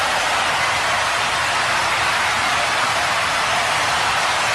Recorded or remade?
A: recorded